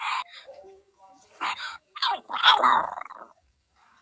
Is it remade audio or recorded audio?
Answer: remade